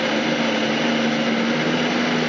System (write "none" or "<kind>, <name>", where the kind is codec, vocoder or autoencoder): none